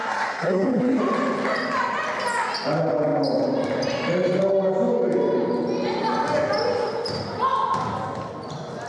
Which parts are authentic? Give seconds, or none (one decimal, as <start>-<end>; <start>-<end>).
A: 1.0-8.9